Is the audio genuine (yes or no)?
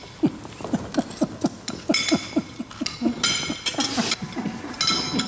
yes